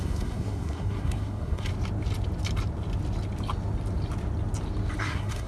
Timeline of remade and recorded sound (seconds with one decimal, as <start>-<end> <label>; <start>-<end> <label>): 0.0-1.7 remade; 1.7-5.0 recorded; 5.0-5.5 remade